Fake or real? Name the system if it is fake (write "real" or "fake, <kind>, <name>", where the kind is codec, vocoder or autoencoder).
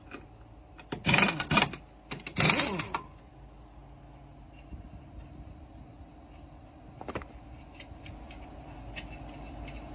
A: real